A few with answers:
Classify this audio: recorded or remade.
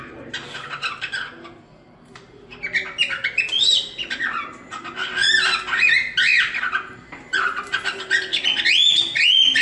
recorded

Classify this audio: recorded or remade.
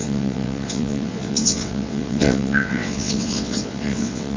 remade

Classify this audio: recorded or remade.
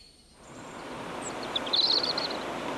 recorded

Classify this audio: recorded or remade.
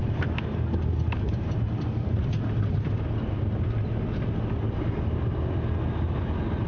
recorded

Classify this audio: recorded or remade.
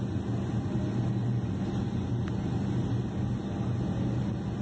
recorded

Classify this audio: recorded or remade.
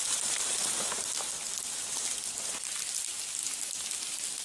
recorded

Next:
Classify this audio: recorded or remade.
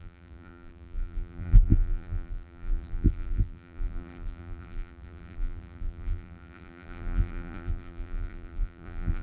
remade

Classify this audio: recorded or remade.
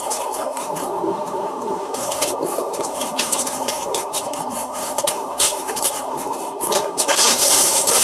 remade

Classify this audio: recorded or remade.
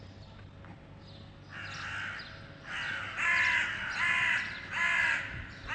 recorded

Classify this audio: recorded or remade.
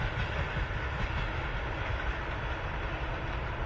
recorded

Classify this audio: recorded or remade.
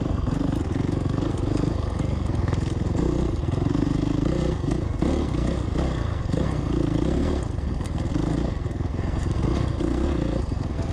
remade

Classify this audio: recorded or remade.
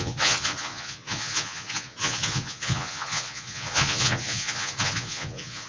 remade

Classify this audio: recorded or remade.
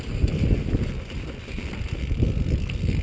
recorded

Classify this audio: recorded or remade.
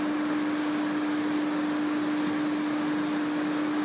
recorded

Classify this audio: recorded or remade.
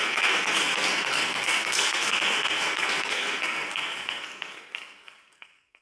remade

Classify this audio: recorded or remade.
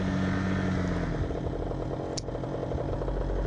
recorded